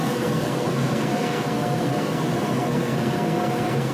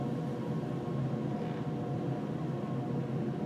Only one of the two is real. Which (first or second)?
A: second